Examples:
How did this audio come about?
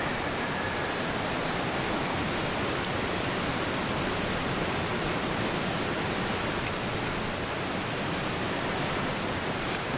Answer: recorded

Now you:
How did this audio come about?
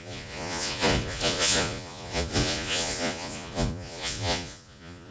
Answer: remade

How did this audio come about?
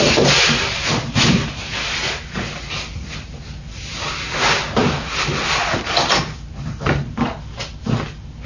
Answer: recorded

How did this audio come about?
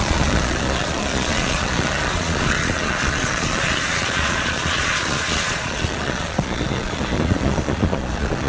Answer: remade